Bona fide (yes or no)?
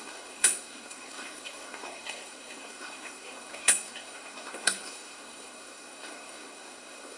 no